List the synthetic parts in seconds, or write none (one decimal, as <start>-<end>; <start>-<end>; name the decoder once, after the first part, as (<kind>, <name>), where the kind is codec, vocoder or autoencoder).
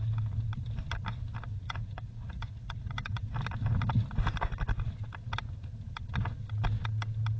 1.5-3.2 (vocoder, Vocos)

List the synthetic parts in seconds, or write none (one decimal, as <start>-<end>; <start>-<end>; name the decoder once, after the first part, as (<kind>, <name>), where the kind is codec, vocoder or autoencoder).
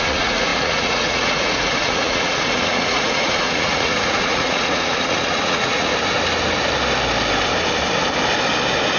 0.0-5.9 (vocoder, Vocos)